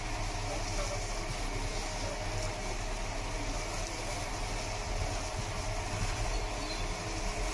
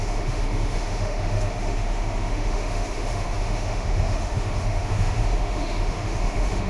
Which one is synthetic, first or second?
second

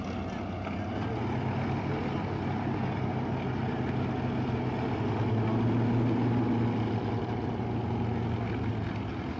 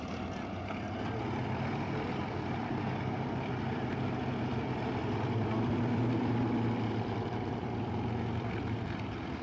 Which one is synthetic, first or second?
second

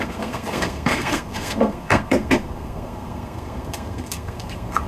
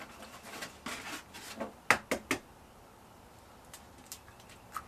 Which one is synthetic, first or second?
first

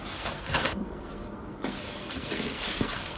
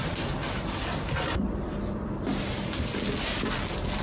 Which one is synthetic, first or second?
first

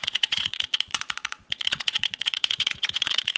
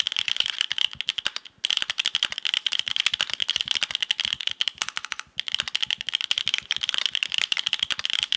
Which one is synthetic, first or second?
first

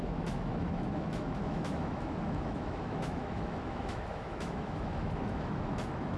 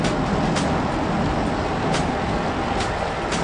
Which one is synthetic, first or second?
first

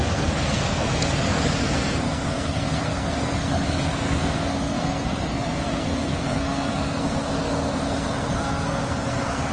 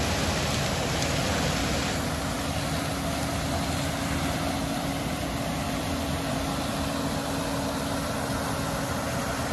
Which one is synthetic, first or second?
first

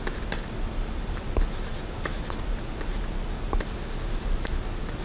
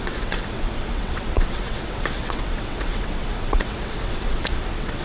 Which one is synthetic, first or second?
second